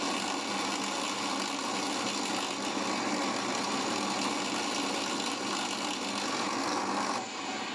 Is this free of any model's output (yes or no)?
yes